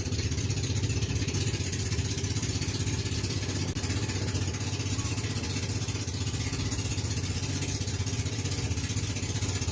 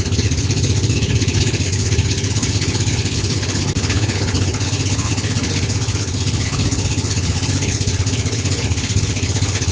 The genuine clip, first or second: first